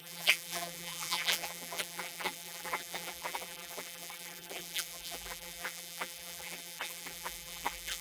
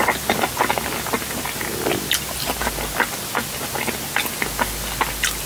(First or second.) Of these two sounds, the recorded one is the second